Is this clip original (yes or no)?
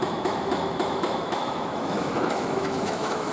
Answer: no